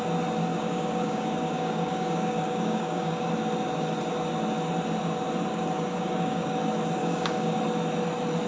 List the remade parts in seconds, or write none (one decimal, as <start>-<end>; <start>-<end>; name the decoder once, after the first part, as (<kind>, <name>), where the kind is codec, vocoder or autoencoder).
0.5-3.3 (codec, DAC); 5.5-6.6; 7.0-7.6